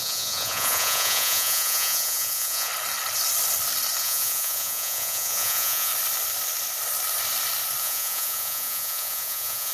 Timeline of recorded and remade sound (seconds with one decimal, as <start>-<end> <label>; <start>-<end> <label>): 0.0-2.7 remade; 2.7-4.0 recorded; 4.0-5.9 remade; 5.9-7.8 recorded; 7.8-9.7 remade

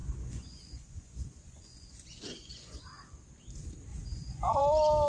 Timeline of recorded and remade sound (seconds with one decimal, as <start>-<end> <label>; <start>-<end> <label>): 0.0-2.8 remade; 2.8-3.9 recorded; 3.9-4.6 remade; 4.6-5.1 recorded

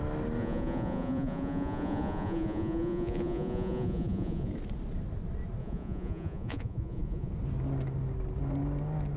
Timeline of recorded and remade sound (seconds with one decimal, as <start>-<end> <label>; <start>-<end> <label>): 0.0-0.4 recorded; 0.4-4.5 remade; 4.5-5.6 recorded; 5.6-7.3 remade; 7.3-9.2 recorded

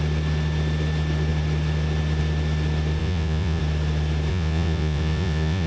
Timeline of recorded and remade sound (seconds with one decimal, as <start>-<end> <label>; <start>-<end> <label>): 0.0-3.0 recorded; 3.0-3.6 remade; 3.6-4.3 recorded; 4.3-5.7 remade

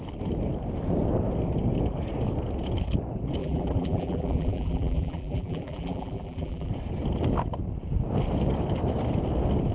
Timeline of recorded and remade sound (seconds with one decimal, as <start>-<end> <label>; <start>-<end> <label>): 0.0-3.4 recorded; 3.4-6.7 remade; 6.7-9.7 recorded

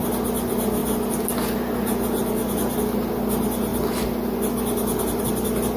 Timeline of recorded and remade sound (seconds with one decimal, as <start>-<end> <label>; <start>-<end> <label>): 0.0-5.8 recorded

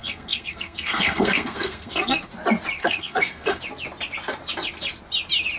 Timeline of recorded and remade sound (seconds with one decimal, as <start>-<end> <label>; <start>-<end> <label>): 0.0-2.3 remade; 2.3-2.8 recorded; 2.8-3.6 remade; 3.6-5.6 recorded

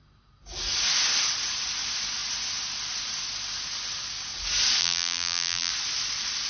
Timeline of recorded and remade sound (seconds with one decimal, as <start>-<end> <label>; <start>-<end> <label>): 0.0-4.8 recorded; 4.8-5.7 remade; 5.7-6.5 recorded